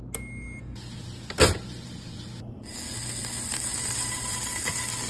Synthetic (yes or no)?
no